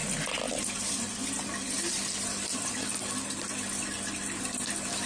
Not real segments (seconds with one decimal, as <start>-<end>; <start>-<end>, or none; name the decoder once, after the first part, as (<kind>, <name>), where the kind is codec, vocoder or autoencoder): none

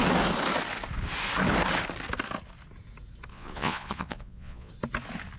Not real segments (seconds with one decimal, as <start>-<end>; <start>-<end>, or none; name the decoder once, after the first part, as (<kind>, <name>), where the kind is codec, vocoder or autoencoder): 3.3-4.7 (vocoder, Vocos)

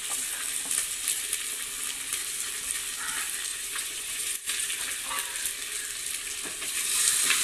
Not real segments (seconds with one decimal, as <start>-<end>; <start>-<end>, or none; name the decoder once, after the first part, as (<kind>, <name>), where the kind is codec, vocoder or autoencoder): 3.5-4.7 (vocoder, Vocos)

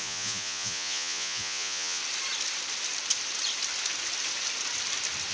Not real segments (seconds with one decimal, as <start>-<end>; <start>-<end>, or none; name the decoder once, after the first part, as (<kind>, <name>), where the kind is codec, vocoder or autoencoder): 0.0-2.0 (vocoder, Vocos)

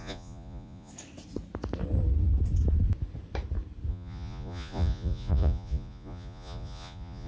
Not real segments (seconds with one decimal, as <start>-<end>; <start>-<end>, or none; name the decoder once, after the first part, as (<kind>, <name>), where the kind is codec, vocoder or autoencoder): 0.0-0.9 (vocoder, Vocos); 3.9-7.3

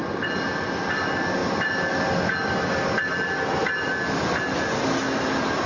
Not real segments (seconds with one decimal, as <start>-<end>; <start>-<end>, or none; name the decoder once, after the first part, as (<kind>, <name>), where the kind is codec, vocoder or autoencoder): none

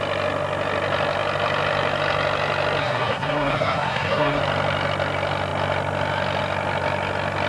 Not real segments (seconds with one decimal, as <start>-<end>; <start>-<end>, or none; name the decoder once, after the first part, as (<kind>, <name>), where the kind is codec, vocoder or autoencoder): 2.8-4.4 (codec, SNAC)